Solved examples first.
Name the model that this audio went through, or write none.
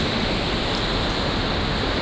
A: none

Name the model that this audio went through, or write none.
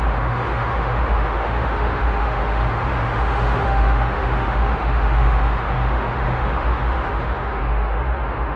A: autoencoder, DAC-VAE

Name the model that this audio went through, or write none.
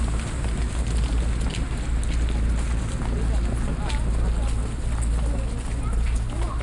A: none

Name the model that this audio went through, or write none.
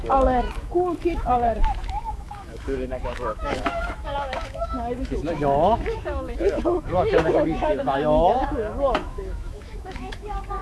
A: autoencoder, DAC-VAE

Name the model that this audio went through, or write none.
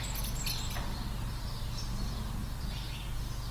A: none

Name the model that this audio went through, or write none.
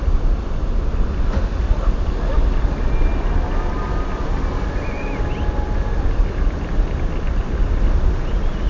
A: none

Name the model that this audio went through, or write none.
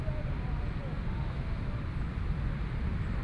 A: none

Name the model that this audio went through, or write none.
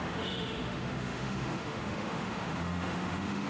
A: autoencoder, DAC-VAE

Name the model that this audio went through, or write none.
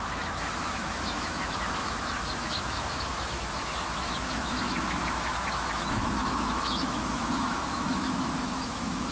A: autoencoder, DAC-VAE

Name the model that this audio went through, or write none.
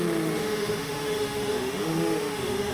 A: autoencoder, DAC-VAE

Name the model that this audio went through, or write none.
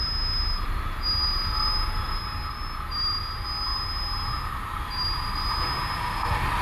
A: none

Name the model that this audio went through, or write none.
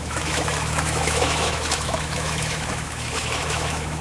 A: autoencoder, DAC-VAE